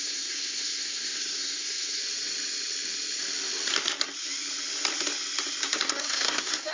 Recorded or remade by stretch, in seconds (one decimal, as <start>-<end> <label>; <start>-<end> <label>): 0.0-2.0 remade; 2.0-6.0 recorded; 6.0-6.7 remade